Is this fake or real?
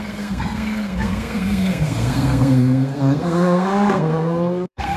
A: fake